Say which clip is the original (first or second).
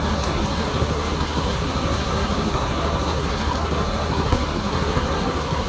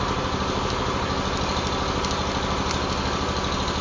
second